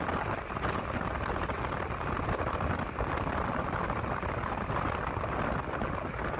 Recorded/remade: recorded